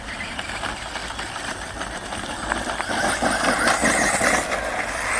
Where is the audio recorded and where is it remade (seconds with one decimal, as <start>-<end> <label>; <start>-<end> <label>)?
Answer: 0.0-5.2 recorded